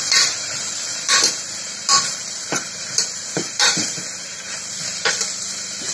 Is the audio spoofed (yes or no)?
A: yes